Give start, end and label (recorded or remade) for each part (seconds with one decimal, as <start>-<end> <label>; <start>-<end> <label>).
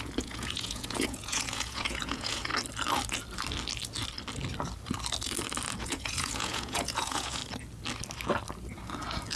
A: 0.0-2.5 remade; 2.5-5.8 recorded; 5.8-7.4 remade; 7.4-9.4 recorded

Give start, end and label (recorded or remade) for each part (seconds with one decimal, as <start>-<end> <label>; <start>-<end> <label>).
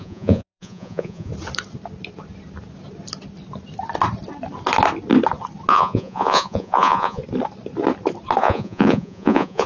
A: 0.0-1.3 remade; 1.3-5.7 recorded; 5.7-7.2 remade; 7.2-8.4 recorded; 8.4-9.7 remade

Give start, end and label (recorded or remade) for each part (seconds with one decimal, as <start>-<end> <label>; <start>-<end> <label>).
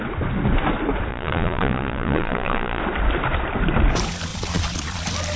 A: 0.0-1.1 recorded; 1.1-2.8 remade; 2.8-4.3 recorded; 4.3-5.0 remade; 5.0-5.4 recorded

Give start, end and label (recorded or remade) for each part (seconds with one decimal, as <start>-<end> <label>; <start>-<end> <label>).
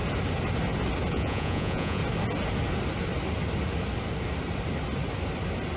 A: 0.0-1.1 recorded; 1.1-2.0 remade; 2.0-5.8 recorded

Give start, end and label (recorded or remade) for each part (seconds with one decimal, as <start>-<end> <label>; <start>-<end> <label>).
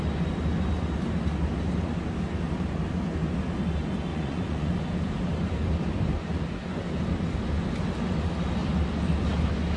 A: 0.0-4.1 recorded; 4.1-4.7 remade; 4.7-9.8 recorded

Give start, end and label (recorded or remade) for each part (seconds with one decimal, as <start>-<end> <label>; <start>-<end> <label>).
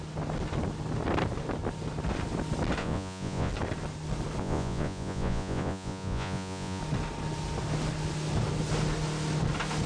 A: 0.0-2.8 recorded; 2.8-3.5 remade; 3.5-4.4 recorded; 4.4-6.8 remade; 6.8-9.9 recorded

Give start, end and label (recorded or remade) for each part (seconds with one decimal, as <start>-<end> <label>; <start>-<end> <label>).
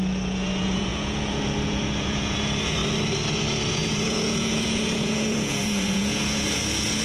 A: 0.0-2.8 remade; 2.8-3.7 recorded; 3.7-7.0 remade